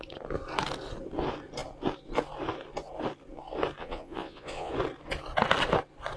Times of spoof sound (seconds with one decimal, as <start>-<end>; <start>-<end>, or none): 3.8-4.7